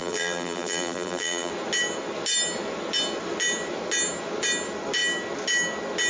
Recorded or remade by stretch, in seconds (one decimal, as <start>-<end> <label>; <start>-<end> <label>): 0.0-1.5 remade; 1.5-6.1 recorded